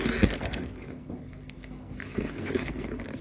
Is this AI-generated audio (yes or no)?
yes